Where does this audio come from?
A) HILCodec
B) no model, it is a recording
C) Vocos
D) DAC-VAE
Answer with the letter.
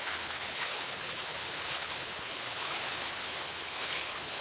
A